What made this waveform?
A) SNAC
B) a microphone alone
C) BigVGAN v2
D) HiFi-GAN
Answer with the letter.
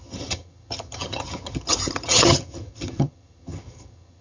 D